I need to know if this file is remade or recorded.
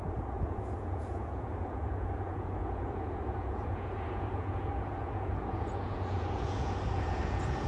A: remade